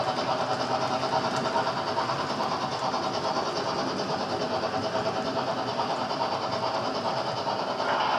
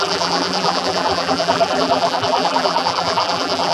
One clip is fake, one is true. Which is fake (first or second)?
second